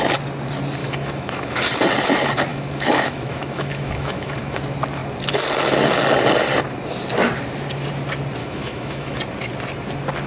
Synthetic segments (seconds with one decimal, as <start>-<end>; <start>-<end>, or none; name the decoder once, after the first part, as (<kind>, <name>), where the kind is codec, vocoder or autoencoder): 0.8-1.6 (autoencoder, DAC-VAE); 2.5-4.6; 8.4-9.2